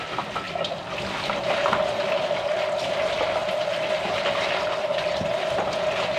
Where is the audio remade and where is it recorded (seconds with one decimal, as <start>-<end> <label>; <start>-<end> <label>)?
0.0-6.2 recorded